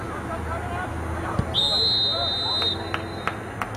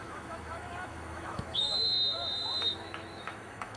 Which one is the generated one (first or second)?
second